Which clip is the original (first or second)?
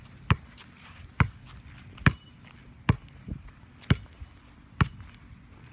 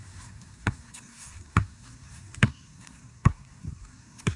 first